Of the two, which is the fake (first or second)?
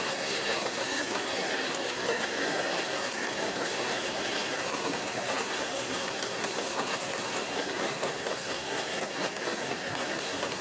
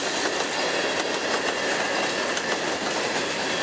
first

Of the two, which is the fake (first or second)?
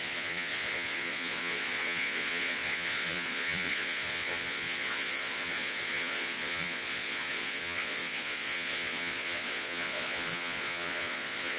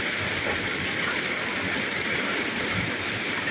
first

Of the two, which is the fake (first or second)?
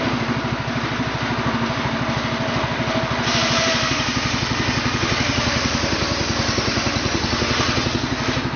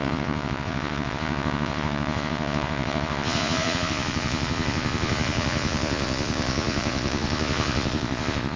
second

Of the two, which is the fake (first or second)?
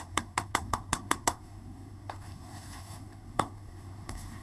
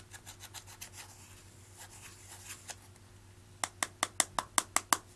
first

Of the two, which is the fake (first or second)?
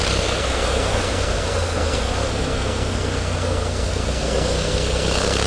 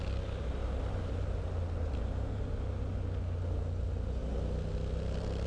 first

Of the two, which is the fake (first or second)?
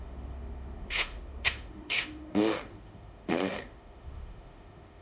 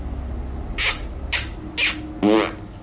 first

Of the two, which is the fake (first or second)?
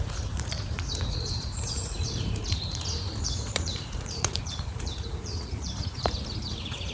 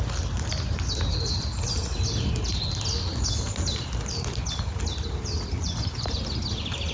first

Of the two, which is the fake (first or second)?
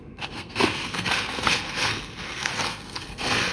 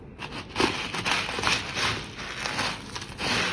first